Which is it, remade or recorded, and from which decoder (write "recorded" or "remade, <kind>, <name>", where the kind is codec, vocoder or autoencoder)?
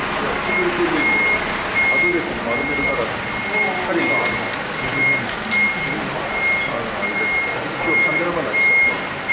recorded